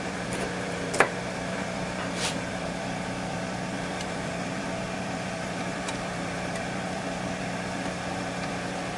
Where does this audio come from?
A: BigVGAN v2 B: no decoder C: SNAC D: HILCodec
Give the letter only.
A